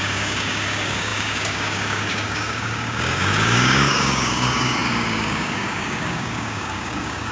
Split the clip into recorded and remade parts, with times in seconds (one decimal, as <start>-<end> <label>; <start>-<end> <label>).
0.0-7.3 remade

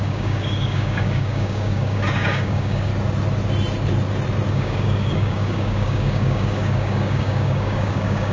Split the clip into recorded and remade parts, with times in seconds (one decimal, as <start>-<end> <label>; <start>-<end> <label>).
0.0-2.9 remade; 2.9-4.5 recorded; 4.5-8.3 remade

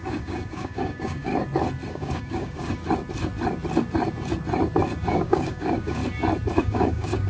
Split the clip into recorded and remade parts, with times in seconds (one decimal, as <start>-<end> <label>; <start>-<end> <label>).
0.0-1.3 remade; 1.3-1.9 recorded; 1.9-2.6 remade; 2.6-5.1 recorded; 5.1-6.0 remade; 6.0-6.5 recorded; 6.5-7.3 remade

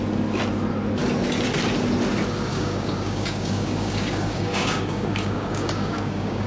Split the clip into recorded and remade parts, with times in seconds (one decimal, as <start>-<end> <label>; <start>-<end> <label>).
0.0-2.5 recorded; 2.5-6.5 remade

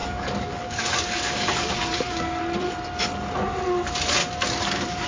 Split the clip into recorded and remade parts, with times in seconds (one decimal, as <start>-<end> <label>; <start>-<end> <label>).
0.0-2.4 remade; 2.4-4.2 recorded; 4.2-5.1 remade